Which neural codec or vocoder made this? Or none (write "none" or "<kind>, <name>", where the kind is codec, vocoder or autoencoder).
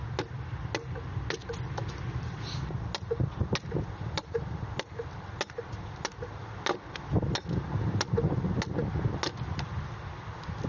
none